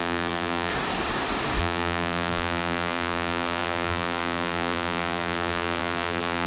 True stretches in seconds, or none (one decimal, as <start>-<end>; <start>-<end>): 0.7-1.6